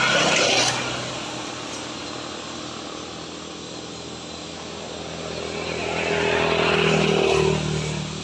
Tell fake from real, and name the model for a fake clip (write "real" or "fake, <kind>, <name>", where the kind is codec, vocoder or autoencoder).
real